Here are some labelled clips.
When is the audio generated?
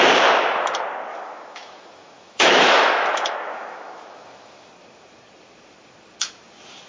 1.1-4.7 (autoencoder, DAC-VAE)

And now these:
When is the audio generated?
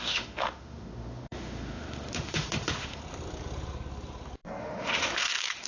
0.0-3.0 (autoencoder, DAC-VAE); 4.6-5.7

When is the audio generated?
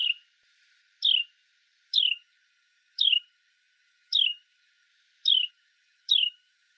1.9-4.9 (autoencoder, DAC-VAE); 5.5-6.8